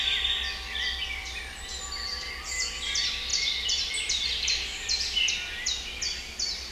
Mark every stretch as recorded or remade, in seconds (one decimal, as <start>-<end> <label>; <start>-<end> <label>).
0.0-1.2 recorded; 1.2-1.8 remade; 1.8-3.3 recorded; 3.3-5.3 remade; 5.3-6.7 recorded